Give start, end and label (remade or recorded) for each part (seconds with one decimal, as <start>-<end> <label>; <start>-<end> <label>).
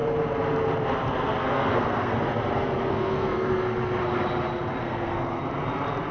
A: 0.0-1.4 recorded; 1.4-2.2 remade; 2.2-2.9 recorded; 2.9-4.0 remade; 4.0-4.8 recorded; 4.8-5.4 remade; 5.4-6.1 recorded